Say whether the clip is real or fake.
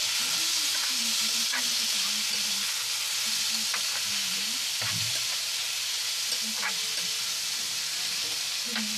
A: real